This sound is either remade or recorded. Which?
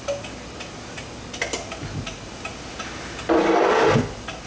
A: recorded